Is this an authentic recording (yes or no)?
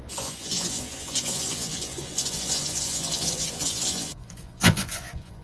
no